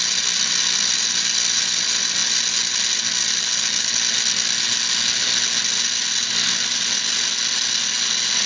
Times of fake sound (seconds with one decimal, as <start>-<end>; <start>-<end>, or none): none